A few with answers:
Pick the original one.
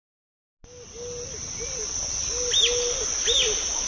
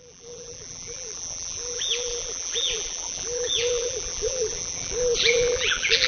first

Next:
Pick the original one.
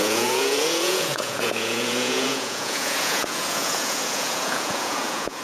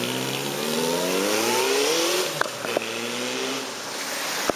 second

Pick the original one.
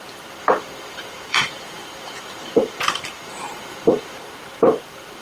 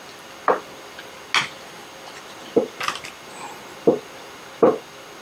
second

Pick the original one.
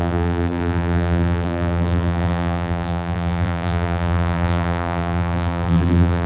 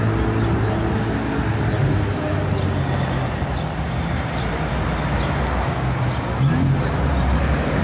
second